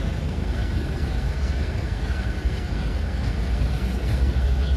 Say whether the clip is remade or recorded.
remade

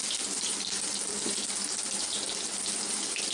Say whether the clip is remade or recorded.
recorded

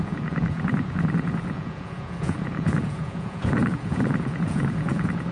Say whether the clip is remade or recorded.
remade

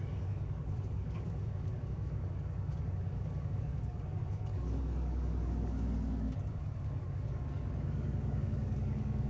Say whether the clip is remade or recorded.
remade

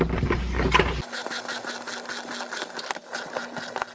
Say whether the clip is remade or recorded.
recorded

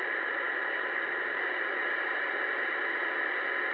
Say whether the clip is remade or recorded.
recorded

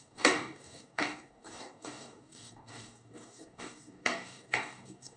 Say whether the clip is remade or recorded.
remade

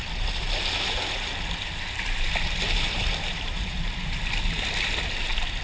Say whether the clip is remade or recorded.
recorded